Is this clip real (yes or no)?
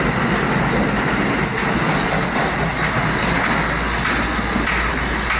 yes